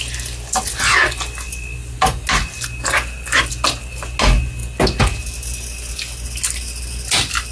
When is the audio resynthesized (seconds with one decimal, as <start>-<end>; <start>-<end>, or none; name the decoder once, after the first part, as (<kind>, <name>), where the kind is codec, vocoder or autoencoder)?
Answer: none